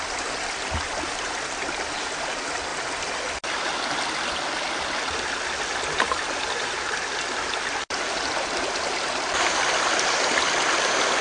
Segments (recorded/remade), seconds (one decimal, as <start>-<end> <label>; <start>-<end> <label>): 0.0-11.2 recorded